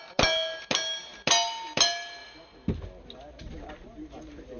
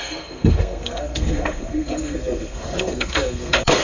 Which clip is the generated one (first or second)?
second